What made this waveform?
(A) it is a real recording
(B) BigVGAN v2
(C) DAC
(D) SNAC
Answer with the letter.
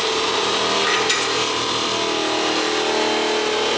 A